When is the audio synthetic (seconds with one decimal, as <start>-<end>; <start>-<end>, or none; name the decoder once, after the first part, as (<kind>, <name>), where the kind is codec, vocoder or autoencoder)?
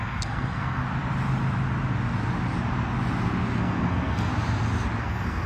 0.0-0.8 (codec, SNAC); 3.6-4.3; 5.0-5.5